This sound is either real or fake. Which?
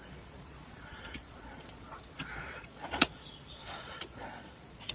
fake